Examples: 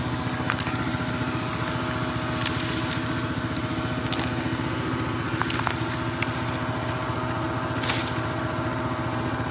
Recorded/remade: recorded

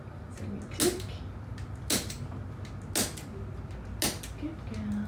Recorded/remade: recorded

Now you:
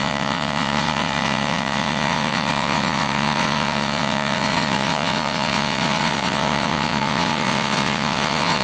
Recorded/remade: remade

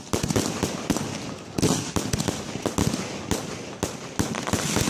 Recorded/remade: recorded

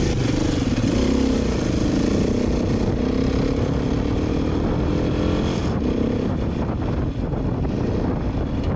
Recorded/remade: recorded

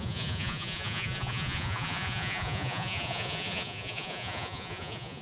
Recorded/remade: remade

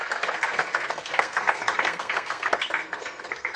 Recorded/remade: remade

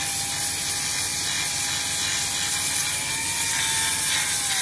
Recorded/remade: recorded